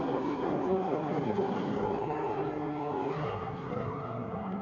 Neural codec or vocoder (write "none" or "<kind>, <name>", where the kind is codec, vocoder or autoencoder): codec, SNAC